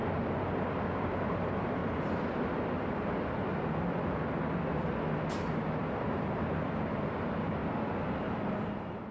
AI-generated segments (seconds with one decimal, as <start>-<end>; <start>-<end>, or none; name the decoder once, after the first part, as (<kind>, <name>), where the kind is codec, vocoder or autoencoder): 0.0-1.8 (vocoder, BigVGAN v2); 5.9-7.6; 8.2-9.1